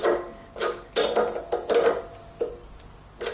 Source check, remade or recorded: recorded